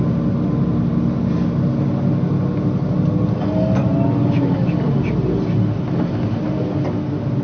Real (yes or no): yes